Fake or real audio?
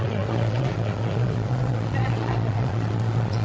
fake